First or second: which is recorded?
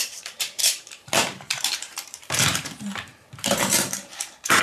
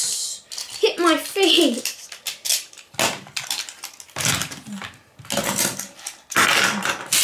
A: second